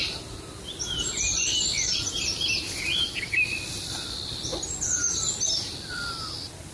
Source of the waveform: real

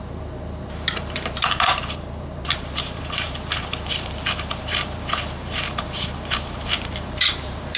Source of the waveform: fake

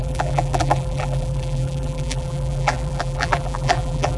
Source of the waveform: fake